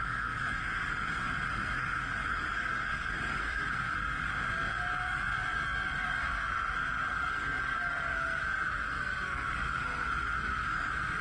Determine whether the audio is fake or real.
fake